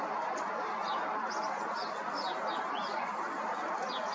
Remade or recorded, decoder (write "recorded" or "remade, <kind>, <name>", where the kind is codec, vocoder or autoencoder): recorded